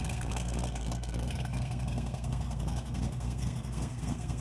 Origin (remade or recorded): remade